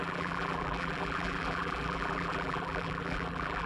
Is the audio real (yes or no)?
no